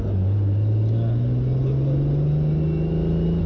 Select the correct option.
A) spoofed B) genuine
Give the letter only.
B